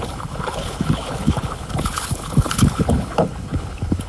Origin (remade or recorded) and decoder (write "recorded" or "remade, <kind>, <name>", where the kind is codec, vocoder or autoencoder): remade, codec, HILCodec